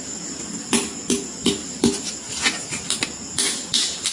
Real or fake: real